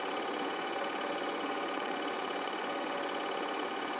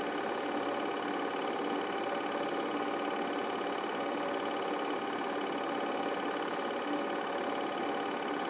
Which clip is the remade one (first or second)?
first